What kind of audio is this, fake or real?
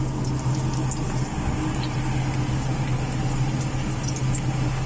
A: real